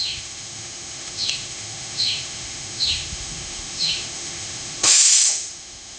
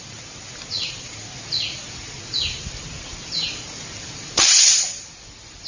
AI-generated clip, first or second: first